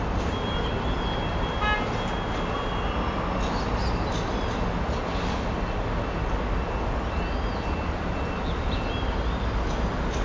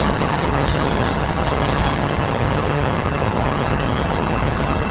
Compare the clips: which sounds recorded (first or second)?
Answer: first